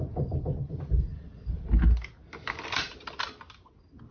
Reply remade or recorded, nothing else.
recorded